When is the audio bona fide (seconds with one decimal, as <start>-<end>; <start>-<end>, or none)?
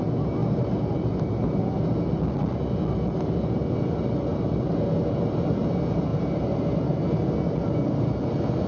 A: 0.0-0.4; 1.7-4.3; 5.5-6.1; 7.3-8.7